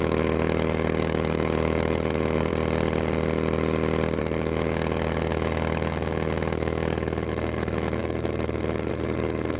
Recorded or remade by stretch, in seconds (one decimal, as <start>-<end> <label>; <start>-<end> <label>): 0.0-2.5 remade; 2.5-4.2 recorded; 4.2-9.6 remade